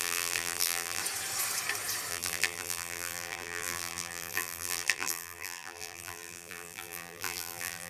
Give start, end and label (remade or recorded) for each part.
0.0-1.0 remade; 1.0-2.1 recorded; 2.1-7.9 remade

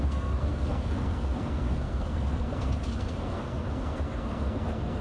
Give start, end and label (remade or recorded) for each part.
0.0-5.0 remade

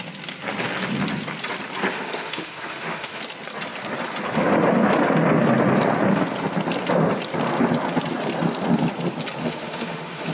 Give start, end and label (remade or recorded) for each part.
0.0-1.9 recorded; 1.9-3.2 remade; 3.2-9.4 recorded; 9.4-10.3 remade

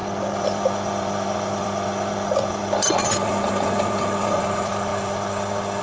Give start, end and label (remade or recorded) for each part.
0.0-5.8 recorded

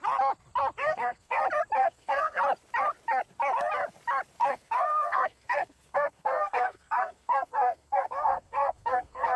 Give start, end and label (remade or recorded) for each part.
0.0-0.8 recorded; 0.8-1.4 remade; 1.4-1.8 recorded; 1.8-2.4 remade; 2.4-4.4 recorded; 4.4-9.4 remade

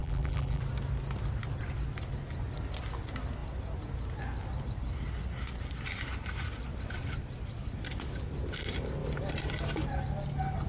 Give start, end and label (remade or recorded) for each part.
0.0-0.6 remade; 0.6-10.7 recorded

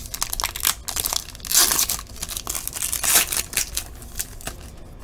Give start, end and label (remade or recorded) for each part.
0.0-5.0 recorded

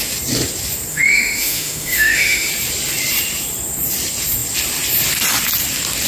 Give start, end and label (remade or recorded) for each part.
0.0-0.9 recorded; 0.9-2.5 remade; 2.5-6.1 recorded